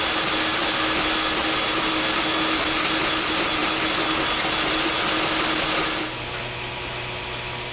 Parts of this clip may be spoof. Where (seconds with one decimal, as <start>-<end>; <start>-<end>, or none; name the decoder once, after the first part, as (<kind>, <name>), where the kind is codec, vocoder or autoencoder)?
none